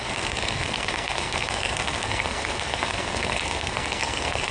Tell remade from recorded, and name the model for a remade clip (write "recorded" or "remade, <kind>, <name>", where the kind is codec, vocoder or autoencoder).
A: remade, codec, SNAC